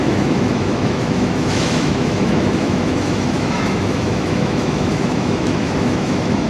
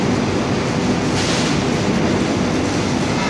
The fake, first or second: first